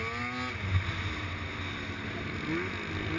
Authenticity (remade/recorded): recorded